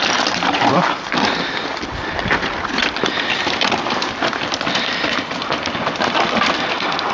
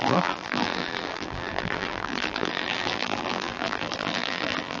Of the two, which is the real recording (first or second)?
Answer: first